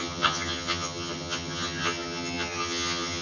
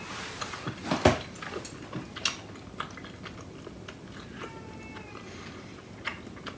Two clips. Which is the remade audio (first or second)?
first